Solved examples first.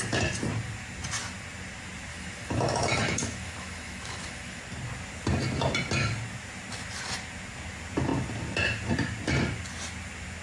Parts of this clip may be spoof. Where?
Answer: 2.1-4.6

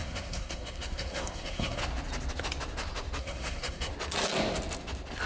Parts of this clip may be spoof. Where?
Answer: 0.0-1.8; 3.2-3.9

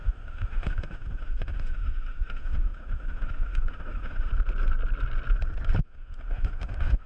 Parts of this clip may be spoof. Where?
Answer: 0.0-4.3; 5.8-7.1

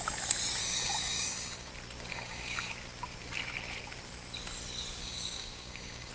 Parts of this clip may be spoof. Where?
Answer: 0.6-1.7; 2.1-2.7; 5.0-6.1

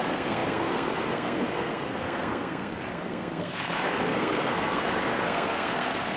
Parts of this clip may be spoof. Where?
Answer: 0.0-6.2

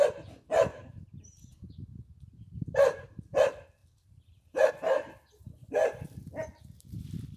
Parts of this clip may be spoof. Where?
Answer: 0.7-3.2; 3.8-4.7

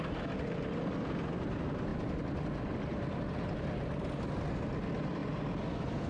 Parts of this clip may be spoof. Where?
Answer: none